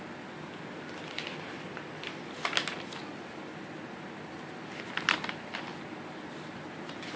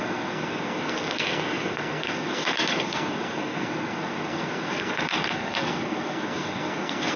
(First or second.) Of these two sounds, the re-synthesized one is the second